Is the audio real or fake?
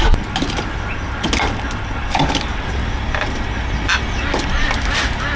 real